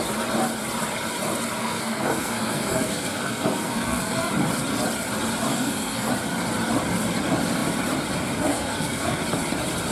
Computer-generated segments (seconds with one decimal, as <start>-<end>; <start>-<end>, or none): 1.6-4.3; 5.5-6.1; 8.5-9.2

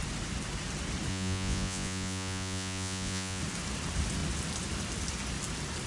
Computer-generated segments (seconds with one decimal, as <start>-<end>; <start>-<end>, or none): 1.1-3.4